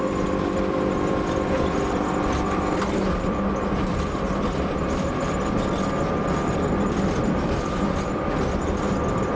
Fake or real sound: fake